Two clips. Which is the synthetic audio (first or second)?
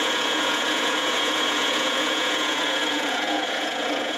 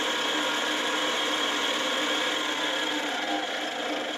first